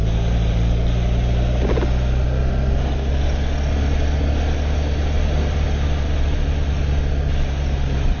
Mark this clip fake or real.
real